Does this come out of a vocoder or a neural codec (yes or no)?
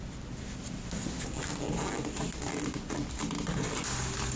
no